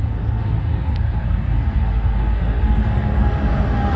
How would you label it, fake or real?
fake